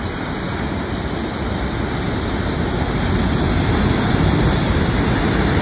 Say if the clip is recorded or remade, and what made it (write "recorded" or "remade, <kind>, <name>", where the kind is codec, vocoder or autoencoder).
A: recorded